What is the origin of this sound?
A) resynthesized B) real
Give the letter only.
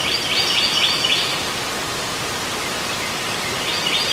A